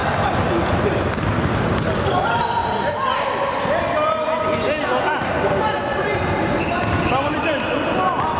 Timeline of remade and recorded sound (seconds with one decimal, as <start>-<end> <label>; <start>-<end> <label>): 0.0-8.4 recorded